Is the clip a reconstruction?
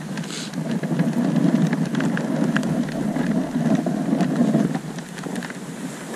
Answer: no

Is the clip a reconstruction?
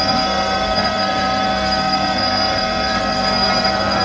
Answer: yes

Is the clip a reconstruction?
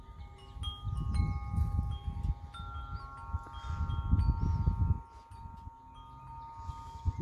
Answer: no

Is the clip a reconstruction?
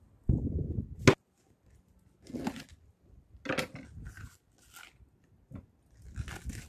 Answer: no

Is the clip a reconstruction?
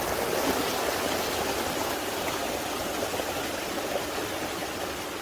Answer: no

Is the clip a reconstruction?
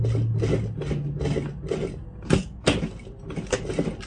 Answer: no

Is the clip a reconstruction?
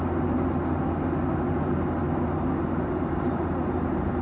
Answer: no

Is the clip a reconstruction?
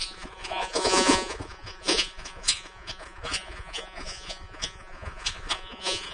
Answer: yes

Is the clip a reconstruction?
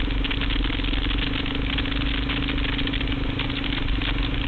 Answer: no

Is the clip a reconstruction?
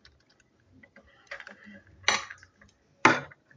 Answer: no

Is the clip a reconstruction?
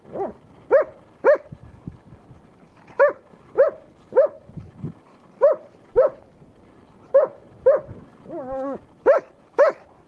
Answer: no